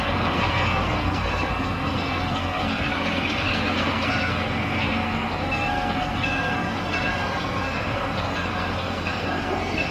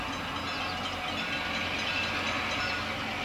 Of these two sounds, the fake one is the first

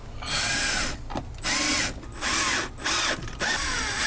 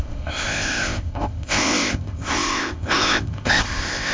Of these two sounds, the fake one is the second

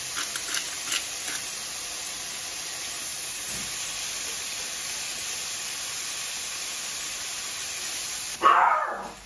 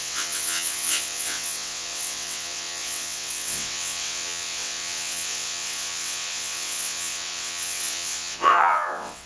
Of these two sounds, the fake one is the second